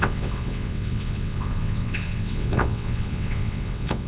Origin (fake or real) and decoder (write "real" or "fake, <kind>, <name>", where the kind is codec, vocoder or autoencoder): fake, vocoder, WaveNeXt